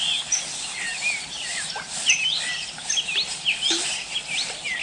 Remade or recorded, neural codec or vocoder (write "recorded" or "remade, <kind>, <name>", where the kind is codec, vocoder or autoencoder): recorded